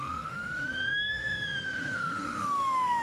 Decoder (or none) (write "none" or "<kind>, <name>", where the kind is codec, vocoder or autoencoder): autoencoder, DAC-VAE